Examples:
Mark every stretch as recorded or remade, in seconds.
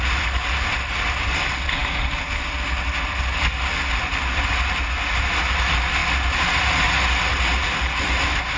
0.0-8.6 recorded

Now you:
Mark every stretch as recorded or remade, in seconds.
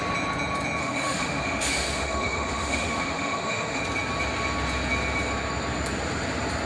0.0-0.8 recorded; 0.8-3.8 remade; 3.8-6.7 recorded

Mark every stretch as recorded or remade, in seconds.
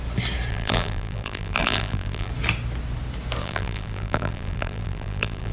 0.0-0.5 recorded; 0.5-2.3 remade; 2.3-3.4 recorded; 3.4-5.5 remade